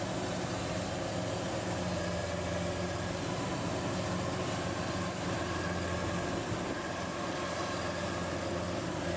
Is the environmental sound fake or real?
real